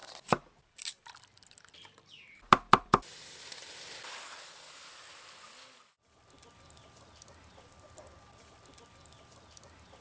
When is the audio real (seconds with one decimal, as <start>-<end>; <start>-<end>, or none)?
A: 4.0-10.0